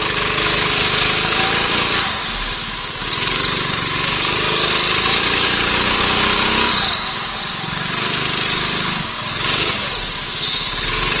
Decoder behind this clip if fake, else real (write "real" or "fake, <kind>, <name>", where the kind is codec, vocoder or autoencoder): fake, codec, DAC